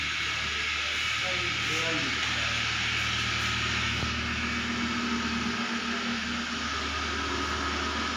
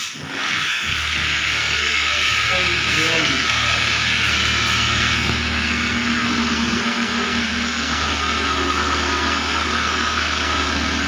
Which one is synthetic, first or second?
second